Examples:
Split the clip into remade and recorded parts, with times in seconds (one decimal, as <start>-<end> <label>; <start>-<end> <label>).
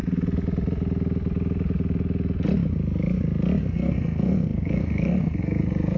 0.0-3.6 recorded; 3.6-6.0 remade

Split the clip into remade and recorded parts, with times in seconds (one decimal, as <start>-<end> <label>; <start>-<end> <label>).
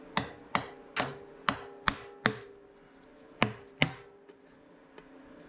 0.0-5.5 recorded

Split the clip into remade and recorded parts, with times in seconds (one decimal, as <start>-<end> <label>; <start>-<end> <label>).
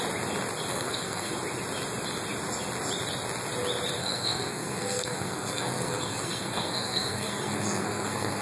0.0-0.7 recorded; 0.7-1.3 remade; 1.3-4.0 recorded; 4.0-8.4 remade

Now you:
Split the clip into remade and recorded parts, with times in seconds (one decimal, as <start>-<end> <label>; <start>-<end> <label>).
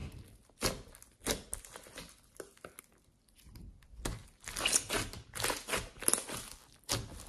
0.0-7.3 recorded